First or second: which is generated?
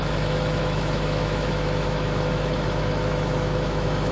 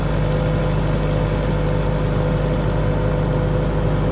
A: first